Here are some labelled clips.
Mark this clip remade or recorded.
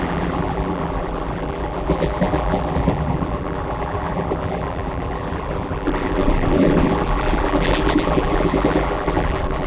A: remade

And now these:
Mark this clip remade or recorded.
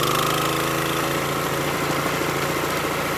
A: recorded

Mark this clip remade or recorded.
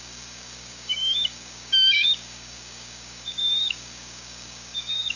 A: remade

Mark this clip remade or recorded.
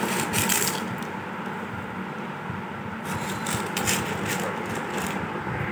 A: recorded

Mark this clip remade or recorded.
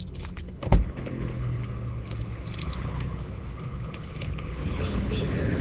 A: remade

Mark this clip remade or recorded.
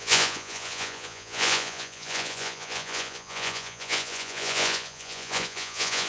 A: remade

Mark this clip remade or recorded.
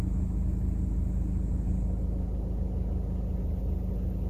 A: recorded